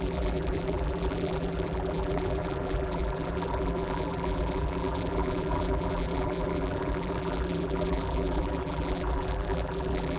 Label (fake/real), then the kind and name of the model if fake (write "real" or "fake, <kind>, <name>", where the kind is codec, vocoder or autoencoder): fake, vocoder, BigVGAN v2